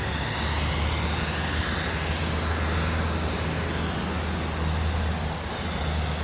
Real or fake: real